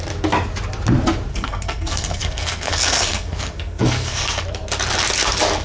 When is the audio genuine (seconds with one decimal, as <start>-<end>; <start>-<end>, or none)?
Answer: 0.0-1.3; 4.4-5.6